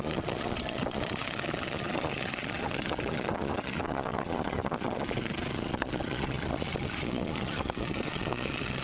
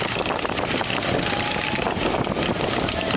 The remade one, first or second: first